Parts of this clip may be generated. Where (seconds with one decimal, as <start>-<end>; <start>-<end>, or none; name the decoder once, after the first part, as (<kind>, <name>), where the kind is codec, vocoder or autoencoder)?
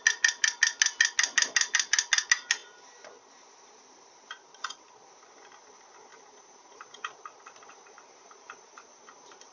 2.6-5.3 (vocoder, BigVGAN v2); 6.1-9.0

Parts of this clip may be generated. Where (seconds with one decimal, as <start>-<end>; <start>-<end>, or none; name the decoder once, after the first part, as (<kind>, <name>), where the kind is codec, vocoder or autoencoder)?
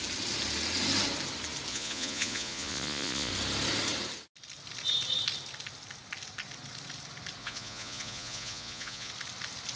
1.7-3.3 (vocoder, Vocos); 7.4-9.1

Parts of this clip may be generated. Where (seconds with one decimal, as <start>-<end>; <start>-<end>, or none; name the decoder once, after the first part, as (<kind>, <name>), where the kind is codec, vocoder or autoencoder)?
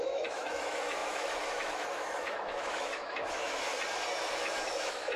0.0-3.7 (autoencoder, DAC-VAE); 4.3-5.2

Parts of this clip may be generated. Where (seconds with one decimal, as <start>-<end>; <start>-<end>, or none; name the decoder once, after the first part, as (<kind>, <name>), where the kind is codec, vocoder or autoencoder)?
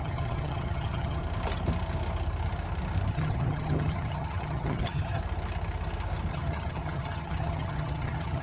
0.0-1.2 (vocoder, HiFi-GAN); 3.1-5.2; 6.3-8.4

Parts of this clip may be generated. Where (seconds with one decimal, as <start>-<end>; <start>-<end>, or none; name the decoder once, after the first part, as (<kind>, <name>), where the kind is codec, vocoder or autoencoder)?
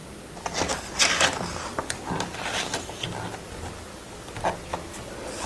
none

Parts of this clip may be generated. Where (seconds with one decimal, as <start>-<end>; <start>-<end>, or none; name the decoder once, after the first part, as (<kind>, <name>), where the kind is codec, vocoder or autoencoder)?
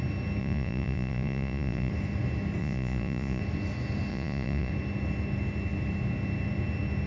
0.4-1.9 (vocoder, Vocos); 2.6-3.4; 4.1-4.7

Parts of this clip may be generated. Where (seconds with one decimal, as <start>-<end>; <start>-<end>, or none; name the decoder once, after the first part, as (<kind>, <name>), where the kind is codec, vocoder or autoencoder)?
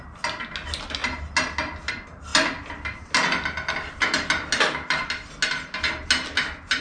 none